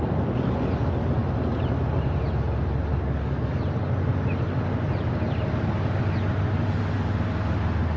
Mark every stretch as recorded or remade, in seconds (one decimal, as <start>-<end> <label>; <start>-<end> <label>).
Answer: 0.0-2.9 recorded; 2.9-3.6 remade; 3.6-8.0 recorded